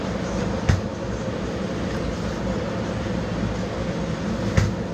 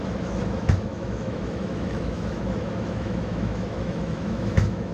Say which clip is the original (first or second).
first